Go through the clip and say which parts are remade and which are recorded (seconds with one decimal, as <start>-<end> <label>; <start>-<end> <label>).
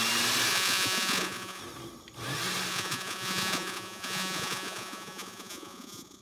0.0-0.5 recorded; 0.5-1.6 remade; 1.6-2.7 recorded; 2.7-6.2 remade